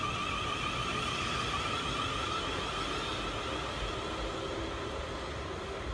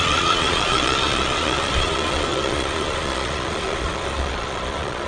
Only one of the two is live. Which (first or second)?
first